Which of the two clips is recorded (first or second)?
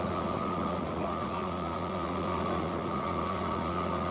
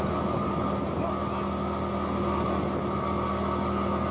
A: second